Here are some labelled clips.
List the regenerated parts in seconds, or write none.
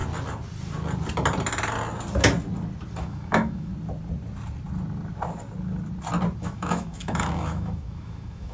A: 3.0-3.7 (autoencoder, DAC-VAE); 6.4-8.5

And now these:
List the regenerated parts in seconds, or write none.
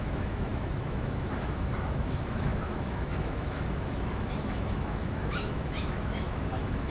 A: 0.0-6.9 (autoencoder, DAC-VAE)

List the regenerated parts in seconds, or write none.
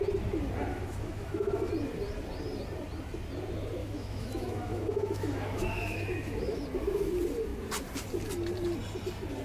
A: 0.7-1.7 (autoencoder, DAC-VAE); 3.8-6.6